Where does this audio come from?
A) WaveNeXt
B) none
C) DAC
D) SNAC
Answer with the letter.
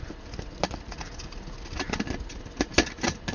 B